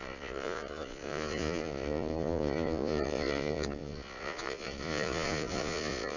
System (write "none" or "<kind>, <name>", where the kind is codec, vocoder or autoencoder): vocoder, Vocos